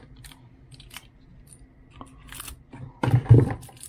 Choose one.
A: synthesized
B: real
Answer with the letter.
B